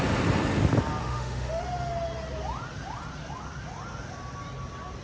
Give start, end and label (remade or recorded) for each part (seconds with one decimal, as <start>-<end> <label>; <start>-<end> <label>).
0.0-1.0 recorded; 1.0-1.6 remade; 1.6-5.0 recorded